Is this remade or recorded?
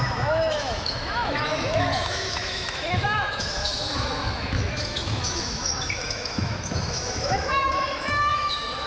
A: remade